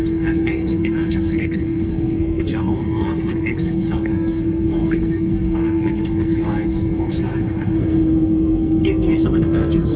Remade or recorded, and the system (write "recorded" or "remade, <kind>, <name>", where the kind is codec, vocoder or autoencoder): remade, codec, SNAC